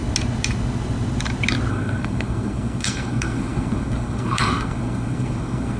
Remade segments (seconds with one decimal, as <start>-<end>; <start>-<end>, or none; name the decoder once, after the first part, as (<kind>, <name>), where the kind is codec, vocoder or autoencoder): 1.7-5.8 (codec, SNAC)